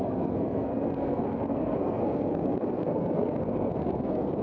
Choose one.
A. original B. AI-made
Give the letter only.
B